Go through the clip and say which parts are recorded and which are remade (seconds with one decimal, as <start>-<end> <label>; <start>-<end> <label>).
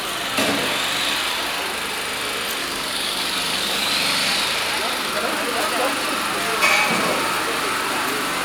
0.0-2.6 recorded; 2.6-3.9 remade; 3.9-8.4 recorded